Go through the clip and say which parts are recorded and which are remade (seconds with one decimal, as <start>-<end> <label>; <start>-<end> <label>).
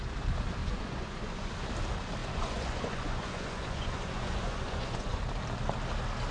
0.0-0.6 recorded; 0.6-1.5 remade; 1.5-2.2 recorded; 2.2-5.2 remade; 5.2-6.3 recorded